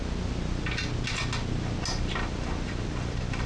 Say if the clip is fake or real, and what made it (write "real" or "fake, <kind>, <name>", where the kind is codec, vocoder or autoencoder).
real